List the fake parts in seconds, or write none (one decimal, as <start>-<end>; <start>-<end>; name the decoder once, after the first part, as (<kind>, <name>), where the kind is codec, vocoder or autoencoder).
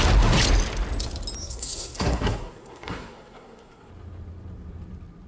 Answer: 1.4-3.9 (codec, SNAC)